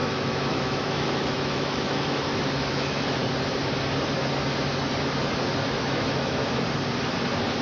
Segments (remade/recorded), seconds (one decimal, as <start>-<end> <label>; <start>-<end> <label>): 0.0-3.2 remade; 3.2-5.6 recorded; 5.6-6.4 remade; 6.4-7.6 recorded